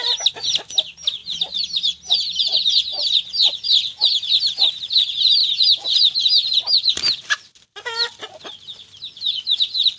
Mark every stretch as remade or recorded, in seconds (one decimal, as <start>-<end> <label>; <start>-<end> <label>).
0.0-10.0 recorded